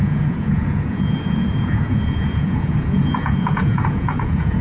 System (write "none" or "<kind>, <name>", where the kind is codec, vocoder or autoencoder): vocoder, Vocos